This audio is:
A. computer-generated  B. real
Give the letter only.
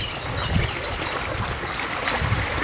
B